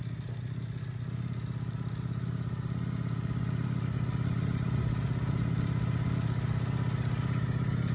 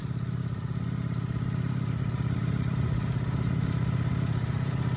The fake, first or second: second